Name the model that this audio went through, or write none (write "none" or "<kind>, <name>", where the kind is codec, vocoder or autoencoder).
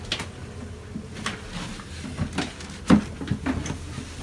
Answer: none